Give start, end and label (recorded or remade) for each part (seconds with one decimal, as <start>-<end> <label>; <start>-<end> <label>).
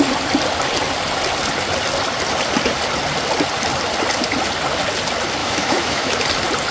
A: 0.0-5.4 recorded; 5.4-6.2 remade; 6.2-6.7 recorded